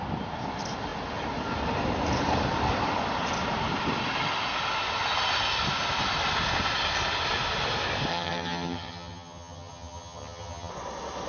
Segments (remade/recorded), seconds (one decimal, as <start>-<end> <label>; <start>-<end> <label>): 0.0-8.1 recorded; 8.1-10.7 remade; 10.7-11.3 recorded